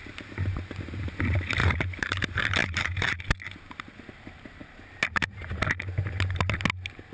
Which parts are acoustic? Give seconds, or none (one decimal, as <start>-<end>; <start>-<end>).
1.0-1.6; 2.2-2.6; 3.2-7.1